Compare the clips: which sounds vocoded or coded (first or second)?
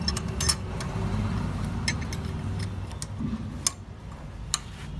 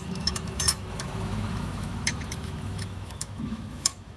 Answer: second